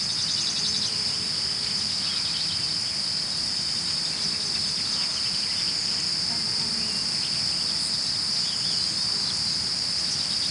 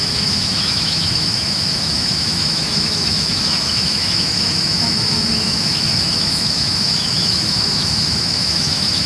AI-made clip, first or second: second